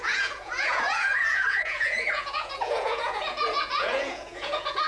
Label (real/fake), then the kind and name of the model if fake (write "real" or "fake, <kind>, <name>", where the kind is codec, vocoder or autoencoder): fake, vocoder, Vocos